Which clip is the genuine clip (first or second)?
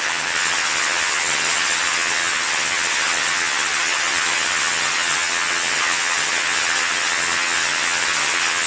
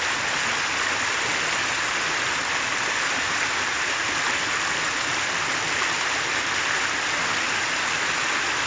second